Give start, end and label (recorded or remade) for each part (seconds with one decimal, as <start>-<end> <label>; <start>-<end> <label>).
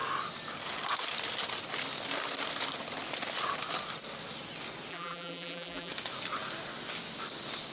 0.0-4.9 recorded; 4.9-5.9 remade; 5.9-7.7 recorded